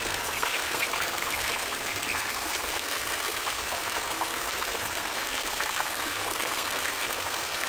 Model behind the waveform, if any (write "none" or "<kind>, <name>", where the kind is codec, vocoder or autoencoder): codec, SNAC